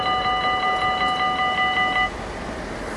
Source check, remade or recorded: recorded